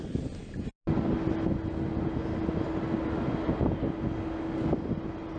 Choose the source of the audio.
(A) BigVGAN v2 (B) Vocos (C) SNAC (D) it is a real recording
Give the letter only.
D